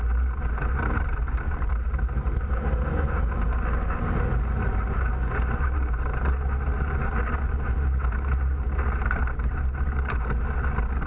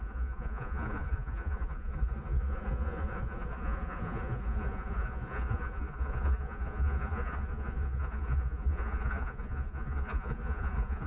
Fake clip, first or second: second